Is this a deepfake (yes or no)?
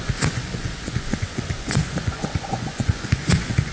yes